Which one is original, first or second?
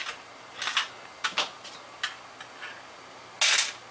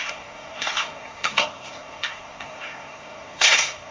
first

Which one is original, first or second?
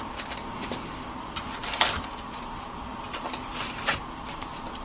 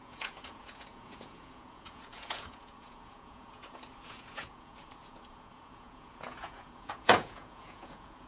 first